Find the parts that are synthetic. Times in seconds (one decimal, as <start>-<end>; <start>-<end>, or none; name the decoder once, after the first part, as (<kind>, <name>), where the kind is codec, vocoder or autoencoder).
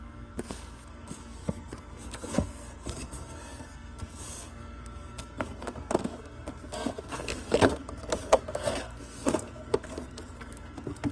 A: 0.0-11.1 (codec, SNAC)